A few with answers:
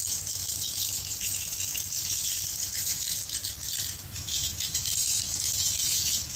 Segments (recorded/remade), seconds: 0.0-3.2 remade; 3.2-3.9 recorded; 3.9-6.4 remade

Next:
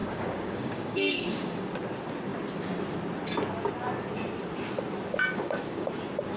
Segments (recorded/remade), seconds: 0.0-1.5 remade; 1.5-5.3 recorded; 5.3-5.9 remade; 5.9-6.4 recorded

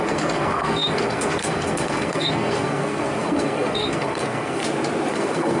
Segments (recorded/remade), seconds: 0.0-4.6 remade; 4.6-5.1 recorded; 5.1-5.6 remade